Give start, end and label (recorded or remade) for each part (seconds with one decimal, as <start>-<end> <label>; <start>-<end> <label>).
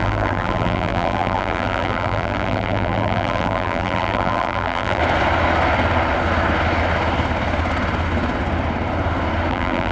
0.0-5.0 remade; 5.0-9.5 recorded; 9.5-9.9 remade